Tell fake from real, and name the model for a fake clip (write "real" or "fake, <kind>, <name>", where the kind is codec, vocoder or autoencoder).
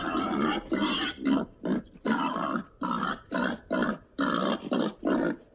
real